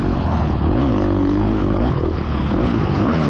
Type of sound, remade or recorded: remade